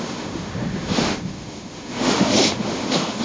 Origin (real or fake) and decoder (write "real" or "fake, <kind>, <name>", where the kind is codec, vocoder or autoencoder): fake, autoencoder, DAC-VAE